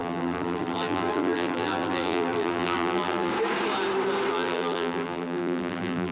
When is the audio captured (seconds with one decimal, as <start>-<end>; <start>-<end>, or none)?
3.3-4.3